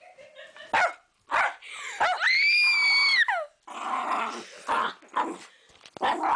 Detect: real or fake real